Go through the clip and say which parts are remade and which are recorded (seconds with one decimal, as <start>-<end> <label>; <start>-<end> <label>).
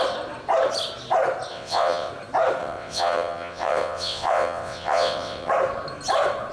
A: 0.0-1.5 recorded; 1.5-2.1 remade; 2.1-2.6 recorded; 2.6-5.5 remade; 5.5-6.5 recorded